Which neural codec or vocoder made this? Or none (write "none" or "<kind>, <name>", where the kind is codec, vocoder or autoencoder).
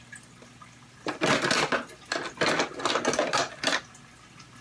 none